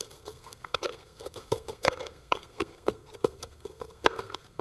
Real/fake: fake